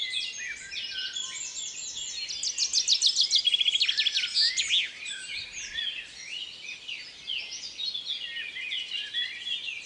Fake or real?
real